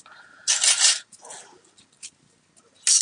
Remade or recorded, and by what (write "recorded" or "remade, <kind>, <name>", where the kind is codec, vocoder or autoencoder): recorded